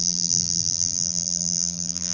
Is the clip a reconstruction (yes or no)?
yes